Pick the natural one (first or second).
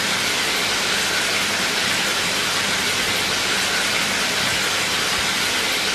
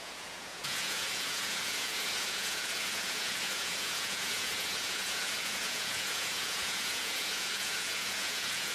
first